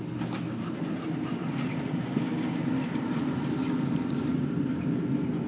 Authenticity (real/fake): real